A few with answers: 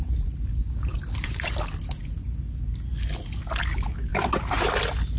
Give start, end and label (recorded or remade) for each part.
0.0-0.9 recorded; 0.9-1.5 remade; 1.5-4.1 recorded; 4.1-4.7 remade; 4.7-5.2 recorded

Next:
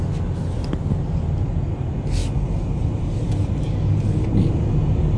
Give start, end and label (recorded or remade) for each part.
0.0-5.2 recorded

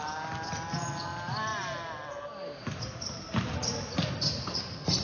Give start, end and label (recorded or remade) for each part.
0.0-5.0 recorded